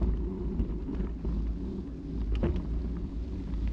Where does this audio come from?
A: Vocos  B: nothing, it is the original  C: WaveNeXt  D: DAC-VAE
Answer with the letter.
B